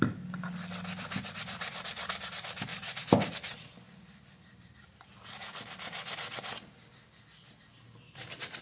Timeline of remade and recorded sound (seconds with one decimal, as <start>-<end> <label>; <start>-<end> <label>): 0.0-8.6 recorded